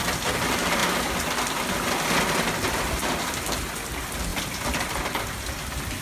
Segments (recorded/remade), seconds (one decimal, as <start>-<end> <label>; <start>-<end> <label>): 0.0-6.0 recorded